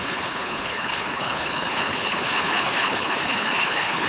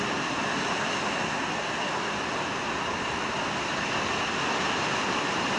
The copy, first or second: first